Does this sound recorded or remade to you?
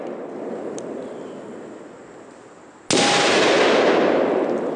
recorded